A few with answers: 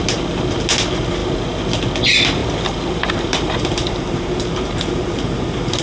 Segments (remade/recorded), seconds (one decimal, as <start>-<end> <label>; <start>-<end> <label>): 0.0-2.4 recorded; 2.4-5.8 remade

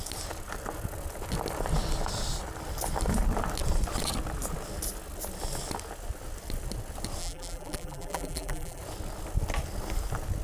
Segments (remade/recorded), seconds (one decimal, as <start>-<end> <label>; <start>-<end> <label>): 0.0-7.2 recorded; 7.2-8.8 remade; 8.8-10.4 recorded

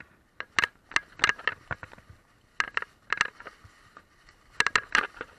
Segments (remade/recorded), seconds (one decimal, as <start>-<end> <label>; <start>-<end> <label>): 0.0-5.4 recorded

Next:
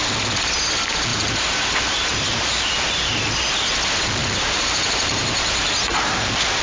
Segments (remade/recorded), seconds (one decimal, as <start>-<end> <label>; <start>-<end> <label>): 0.0-1.1 recorded; 1.1-3.8 remade; 3.8-4.2 recorded; 4.2-5.7 remade; 5.7-6.6 recorded

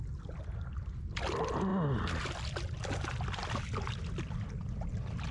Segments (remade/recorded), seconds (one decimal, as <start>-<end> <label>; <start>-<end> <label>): 0.0-5.3 recorded

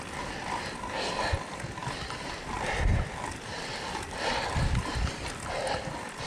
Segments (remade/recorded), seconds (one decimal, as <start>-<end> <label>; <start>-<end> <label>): 0.0-6.3 recorded